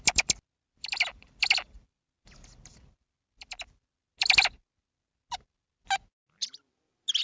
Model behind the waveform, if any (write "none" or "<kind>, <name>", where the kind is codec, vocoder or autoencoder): none